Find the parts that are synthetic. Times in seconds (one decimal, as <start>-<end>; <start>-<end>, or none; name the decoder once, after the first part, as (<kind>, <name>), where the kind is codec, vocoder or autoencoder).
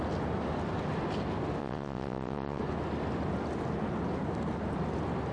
1.6-2.6 (vocoder, WaveNeXt)